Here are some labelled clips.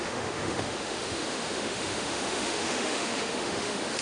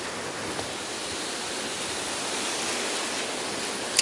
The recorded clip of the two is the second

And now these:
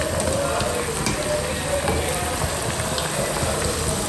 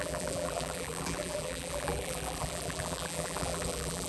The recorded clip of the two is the first